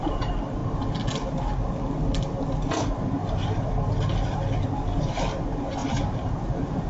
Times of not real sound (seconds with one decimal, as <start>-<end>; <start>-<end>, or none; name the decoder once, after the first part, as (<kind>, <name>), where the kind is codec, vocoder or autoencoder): 3.2-3.7 (vocoder, BigVGAN v2)